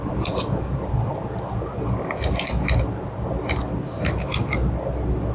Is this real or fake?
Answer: real